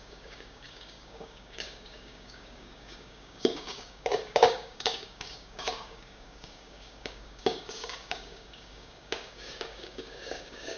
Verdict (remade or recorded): remade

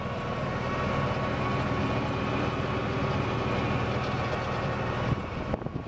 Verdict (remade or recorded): recorded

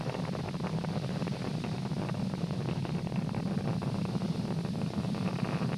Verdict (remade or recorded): recorded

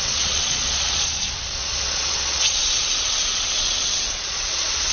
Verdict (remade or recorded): remade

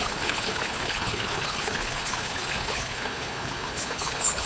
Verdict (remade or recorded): remade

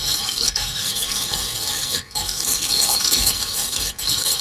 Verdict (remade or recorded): remade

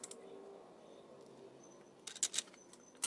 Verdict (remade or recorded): recorded